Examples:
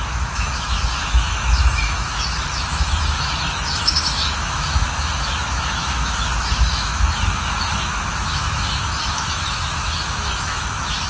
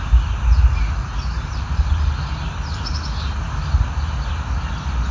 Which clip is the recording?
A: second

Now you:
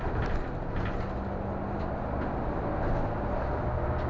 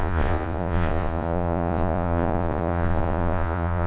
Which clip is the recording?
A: first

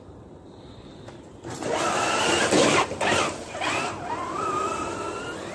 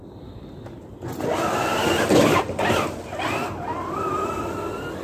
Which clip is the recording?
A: second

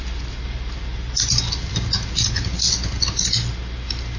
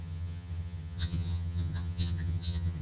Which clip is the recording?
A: first